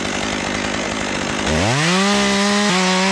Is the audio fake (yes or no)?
no